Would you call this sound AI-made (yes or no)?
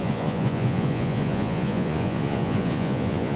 yes